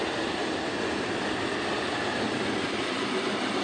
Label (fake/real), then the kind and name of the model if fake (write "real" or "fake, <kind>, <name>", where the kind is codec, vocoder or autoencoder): real